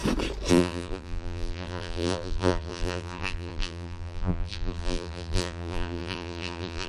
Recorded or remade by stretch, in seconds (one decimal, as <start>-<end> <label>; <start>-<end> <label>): 0.0-0.5 recorded; 0.5-6.9 remade

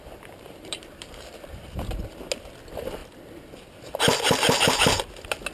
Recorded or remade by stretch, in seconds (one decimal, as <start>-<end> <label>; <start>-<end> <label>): 0.0-2.0 remade; 2.0-5.5 recorded

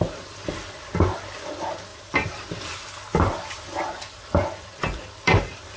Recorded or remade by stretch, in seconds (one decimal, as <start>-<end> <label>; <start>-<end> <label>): 0.0-1.9 recorded; 1.9-2.4 remade; 2.4-3.1 recorded; 3.1-5.8 remade

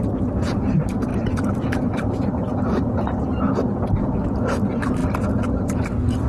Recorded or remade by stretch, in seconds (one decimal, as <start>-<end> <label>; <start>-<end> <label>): 0.0-1.1 recorded; 1.1-3.4 remade; 3.4-6.3 recorded

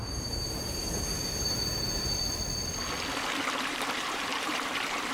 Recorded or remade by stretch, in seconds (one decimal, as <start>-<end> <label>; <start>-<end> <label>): 0.0-2.2 remade; 2.2-3.7 recorded; 3.7-5.1 remade